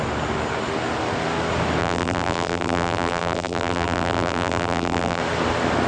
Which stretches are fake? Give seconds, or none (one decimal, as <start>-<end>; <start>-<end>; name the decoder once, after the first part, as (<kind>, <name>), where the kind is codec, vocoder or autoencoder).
1.8-5.2 (vocoder, BigVGAN v2)